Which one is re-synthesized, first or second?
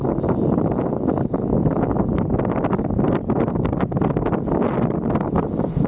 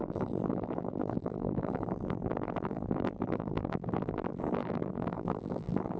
second